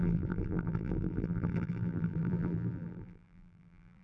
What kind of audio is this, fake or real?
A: fake